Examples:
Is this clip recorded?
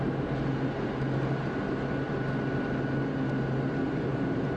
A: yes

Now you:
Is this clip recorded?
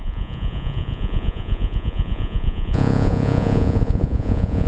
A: no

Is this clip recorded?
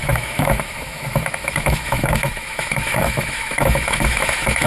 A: no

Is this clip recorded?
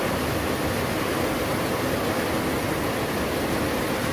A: yes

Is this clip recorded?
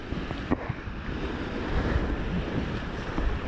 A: yes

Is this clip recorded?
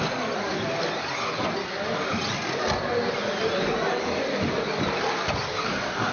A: yes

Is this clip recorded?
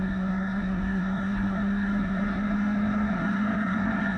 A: no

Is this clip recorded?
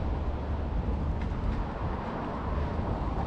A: yes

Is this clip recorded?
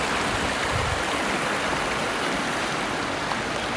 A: yes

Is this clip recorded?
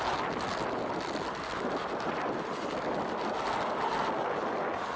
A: yes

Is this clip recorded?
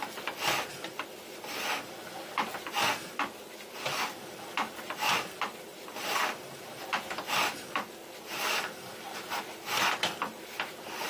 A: yes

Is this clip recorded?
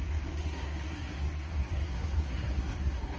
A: no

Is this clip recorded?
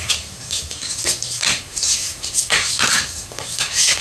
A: no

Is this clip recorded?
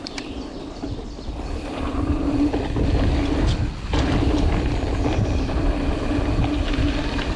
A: no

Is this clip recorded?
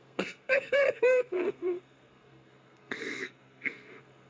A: no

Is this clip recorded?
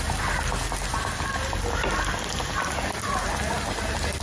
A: yes